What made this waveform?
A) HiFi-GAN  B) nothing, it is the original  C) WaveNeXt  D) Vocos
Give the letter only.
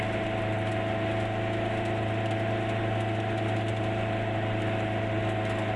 B